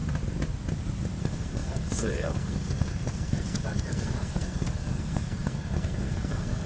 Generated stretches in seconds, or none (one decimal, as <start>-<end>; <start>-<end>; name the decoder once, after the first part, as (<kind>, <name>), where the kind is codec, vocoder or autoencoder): 1.2-6.7 (codec, SNAC)

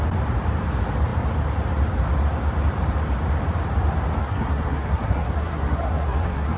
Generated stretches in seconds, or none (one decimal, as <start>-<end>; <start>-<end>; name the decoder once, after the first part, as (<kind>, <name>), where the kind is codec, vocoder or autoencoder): 4.2-6.6 (codec, SNAC)

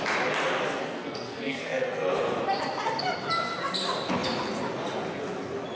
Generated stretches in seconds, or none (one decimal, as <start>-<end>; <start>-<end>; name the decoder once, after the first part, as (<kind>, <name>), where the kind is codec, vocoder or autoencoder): 0.8-2.2 (codec, SNAC)

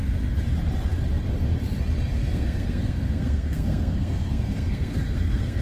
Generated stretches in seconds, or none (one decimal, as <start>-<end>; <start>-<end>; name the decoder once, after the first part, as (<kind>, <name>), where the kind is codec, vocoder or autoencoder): 2.2-5.6 (codec, SNAC)

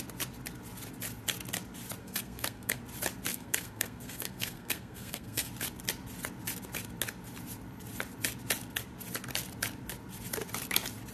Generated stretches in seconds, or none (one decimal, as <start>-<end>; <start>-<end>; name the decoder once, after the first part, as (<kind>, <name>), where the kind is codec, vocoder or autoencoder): 2.0-2.8 (codec, SNAC); 3.3-5.5

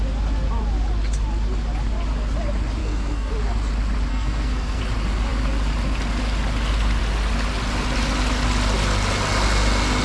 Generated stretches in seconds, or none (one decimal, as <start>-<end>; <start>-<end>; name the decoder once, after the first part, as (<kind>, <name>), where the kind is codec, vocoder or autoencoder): 2.8-3.3 (codec, SNAC); 4.1-4.8

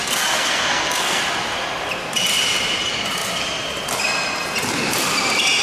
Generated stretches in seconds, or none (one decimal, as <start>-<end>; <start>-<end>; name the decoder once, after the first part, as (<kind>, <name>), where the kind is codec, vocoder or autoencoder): 0.0-1.2 (codec, SNAC)

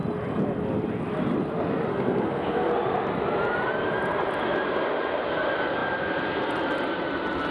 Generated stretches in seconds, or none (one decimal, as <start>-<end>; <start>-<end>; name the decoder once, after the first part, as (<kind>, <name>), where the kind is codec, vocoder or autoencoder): 1.9-2.7 (codec, SNAC)